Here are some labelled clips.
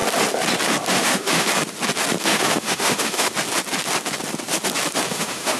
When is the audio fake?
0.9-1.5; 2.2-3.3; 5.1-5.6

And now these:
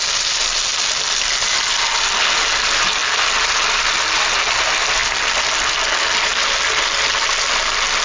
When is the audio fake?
none

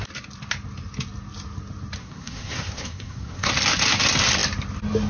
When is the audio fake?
2.0-3.5

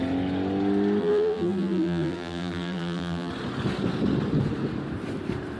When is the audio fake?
1.0-3.3

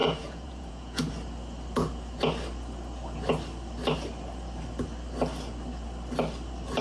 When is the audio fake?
0.0-1.1

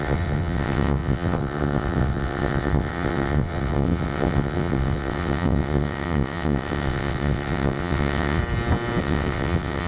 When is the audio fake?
0.0-8.4; 9.0-9.9